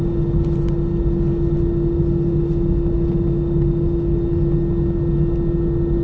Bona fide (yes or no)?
yes